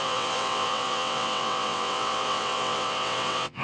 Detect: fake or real fake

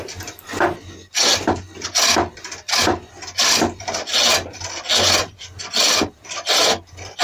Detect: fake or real real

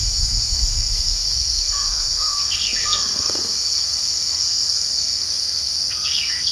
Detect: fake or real fake